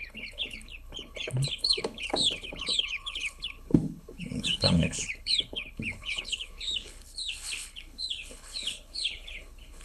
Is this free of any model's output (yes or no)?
no